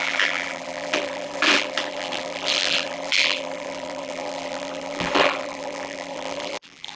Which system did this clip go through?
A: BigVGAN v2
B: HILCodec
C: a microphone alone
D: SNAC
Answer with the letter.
A